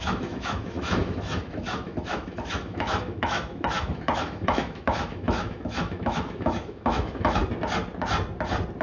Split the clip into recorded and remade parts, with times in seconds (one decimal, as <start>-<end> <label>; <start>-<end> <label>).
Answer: 0.0-7.4 remade; 7.4-8.8 recorded